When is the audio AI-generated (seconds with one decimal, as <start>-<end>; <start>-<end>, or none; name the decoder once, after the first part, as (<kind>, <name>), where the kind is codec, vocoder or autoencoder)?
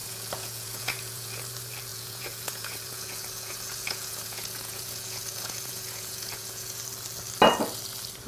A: 0.0-1.4 (vocoder, Vocos); 1.9-6.8